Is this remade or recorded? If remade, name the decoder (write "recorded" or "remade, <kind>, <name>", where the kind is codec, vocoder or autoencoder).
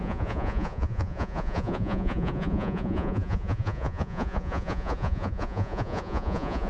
remade, vocoder, Vocos